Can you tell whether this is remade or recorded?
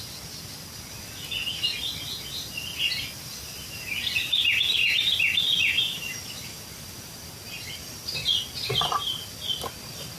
recorded